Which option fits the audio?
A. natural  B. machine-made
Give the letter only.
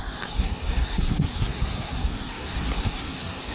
B